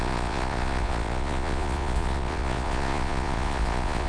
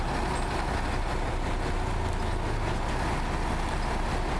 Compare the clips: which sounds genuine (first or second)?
second